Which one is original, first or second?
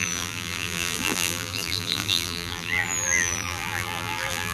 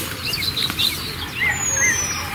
second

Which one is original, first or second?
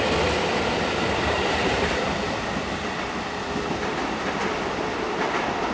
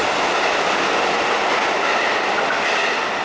second